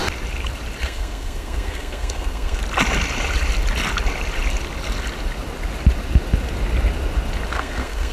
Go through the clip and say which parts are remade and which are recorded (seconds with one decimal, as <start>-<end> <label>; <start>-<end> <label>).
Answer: 0.0-0.8 recorded; 0.8-2.6 remade; 2.6-7.5 recorded; 7.5-8.1 remade